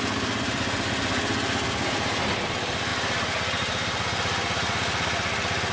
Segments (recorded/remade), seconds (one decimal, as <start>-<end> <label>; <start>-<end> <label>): 0.0-5.7 recorded